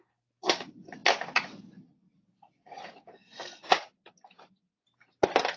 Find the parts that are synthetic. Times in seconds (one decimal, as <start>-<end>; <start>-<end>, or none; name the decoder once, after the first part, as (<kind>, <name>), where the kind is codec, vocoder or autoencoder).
none